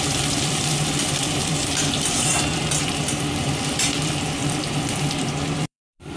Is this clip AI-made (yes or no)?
yes